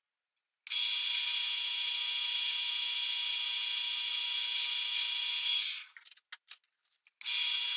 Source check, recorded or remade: recorded